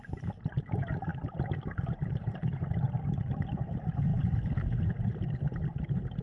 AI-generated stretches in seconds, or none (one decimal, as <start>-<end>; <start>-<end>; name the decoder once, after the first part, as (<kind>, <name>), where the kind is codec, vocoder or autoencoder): none

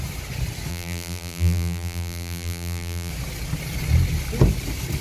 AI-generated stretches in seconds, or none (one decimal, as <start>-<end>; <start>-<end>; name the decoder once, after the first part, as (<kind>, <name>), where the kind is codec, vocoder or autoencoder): 0.7-3.1 (vocoder, BigVGAN v2)

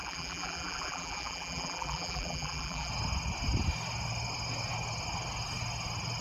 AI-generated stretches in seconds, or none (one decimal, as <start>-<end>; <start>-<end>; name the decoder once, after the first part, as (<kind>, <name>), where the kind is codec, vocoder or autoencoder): 0.0-2.9 (vocoder, BigVGAN v2)

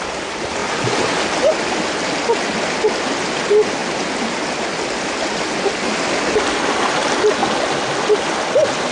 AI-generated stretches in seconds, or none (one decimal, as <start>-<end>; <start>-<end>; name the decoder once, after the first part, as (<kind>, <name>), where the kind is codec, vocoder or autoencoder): 3.8-5.7 (vocoder, BigVGAN v2)

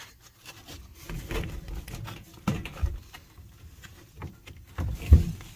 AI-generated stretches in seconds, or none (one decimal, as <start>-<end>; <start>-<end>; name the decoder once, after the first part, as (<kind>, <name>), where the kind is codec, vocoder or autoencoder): 0.0-0.9 (vocoder, BigVGAN v2); 4.3-5.6

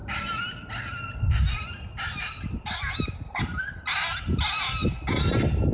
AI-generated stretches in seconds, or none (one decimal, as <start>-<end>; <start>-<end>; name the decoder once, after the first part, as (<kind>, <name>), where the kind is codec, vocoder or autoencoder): 0.0-5.7 (vocoder, BigVGAN v2)